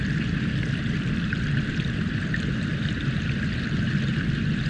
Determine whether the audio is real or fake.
real